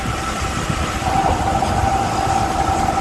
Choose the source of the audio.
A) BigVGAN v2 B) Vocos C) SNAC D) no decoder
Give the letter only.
D